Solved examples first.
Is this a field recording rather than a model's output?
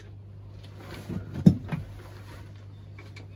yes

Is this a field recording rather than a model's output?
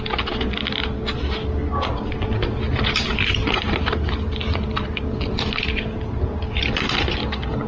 yes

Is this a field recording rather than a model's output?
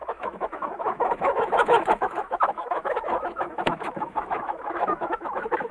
no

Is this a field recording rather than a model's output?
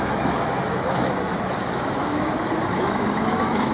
no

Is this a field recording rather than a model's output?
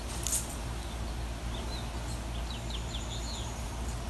yes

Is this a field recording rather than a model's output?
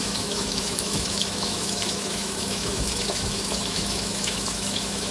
no